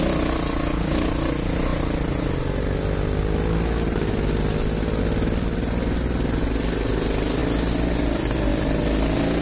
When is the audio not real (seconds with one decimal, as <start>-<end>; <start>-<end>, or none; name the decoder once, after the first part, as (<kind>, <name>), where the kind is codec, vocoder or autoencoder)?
none